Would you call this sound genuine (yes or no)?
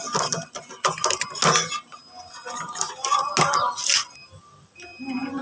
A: yes